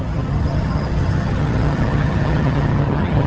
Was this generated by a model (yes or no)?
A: yes